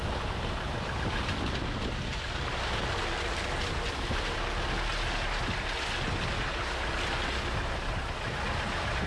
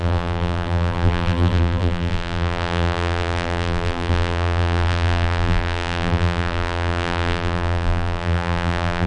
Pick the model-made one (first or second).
second